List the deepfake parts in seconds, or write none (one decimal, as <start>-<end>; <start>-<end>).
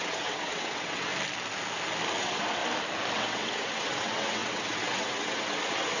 0.0-1.1; 2.2-2.6; 3.1-6.0